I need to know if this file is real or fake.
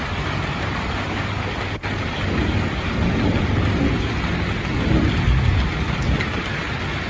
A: real